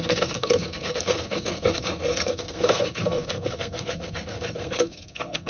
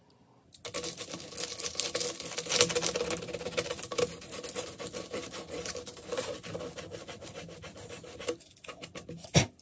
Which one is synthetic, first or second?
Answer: first